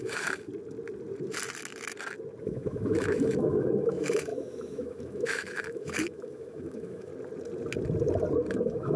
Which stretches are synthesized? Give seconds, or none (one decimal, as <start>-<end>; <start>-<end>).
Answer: 0.0-0.5; 2.4-7.1; 8.6-9.0